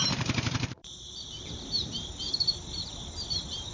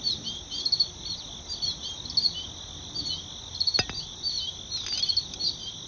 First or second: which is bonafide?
second